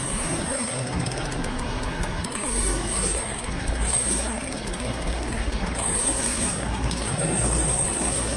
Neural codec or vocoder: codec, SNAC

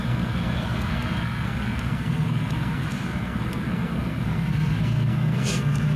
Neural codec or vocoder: codec, SNAC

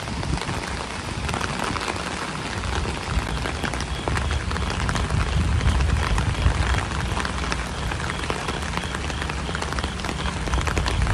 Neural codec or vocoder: none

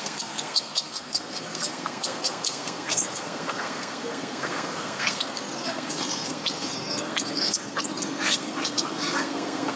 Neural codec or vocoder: codec, SNAC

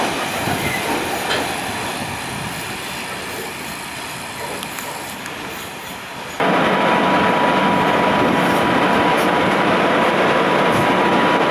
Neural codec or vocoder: none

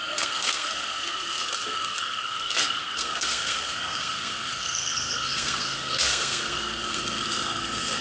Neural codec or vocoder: codec, SNAC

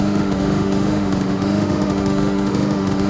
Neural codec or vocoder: autoencoder, DAC-VAE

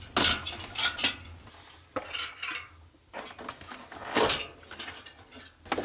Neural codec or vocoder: none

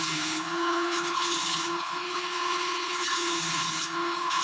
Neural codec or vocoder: codec, HILCodec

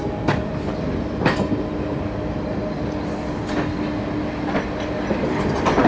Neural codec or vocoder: none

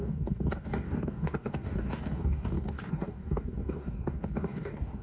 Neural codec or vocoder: codec, DAC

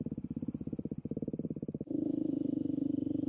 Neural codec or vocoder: none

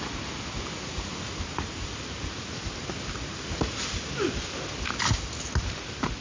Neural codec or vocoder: none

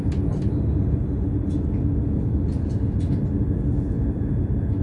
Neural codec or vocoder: none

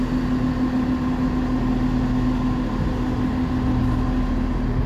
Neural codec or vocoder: none